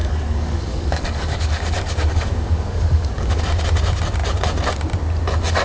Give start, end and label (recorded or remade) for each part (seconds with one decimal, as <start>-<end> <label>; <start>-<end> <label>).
0.0-3.4 remade; 3.4-5.6 recorded